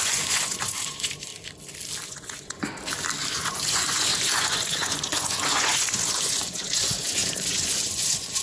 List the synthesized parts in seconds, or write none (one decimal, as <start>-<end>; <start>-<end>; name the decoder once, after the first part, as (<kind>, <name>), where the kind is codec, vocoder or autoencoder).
0.0-1.3 (vocoder, Vocos); 2.1-2.7; 3.3-8.4